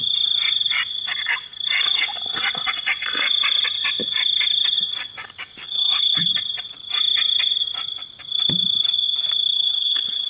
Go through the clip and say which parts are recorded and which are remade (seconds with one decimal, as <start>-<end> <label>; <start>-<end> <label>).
0.0-5.6 recorded; 5.6-6.3 remade; 6.3-9.5 recorded; 9.5-10.3 remade